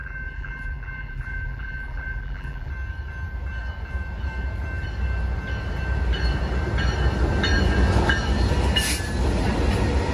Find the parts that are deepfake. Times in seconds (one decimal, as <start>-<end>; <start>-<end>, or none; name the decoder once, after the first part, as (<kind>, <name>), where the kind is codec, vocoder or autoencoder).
0.0-2.7 (vocoder, BigVGAN v2)